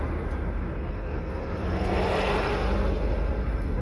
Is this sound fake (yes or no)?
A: no